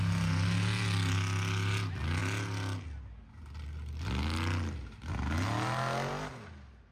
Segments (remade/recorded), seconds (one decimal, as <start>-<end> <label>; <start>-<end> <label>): 0.0-6.9 recorded